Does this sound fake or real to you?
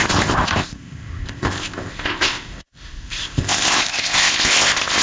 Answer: fake